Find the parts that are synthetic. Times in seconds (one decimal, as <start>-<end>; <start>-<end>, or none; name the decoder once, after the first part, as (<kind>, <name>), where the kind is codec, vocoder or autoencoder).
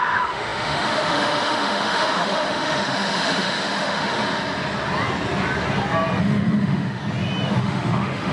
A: 0.0-4.2 (autoencoder, DAC-VAE); 6.2-7.0; 7.6-8.3